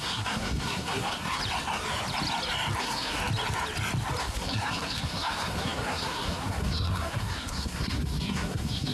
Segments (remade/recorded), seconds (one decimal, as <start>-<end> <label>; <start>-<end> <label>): 0.0-1.4 remade; 1.4-2.8 recorded; 2.8-3.2 remade; 3.2-4.2 recorded; 4.2-8.9 remade